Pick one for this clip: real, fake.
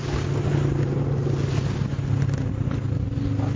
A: real